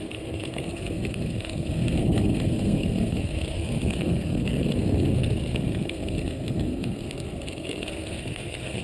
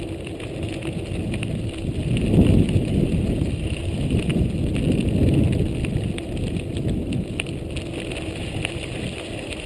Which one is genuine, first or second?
second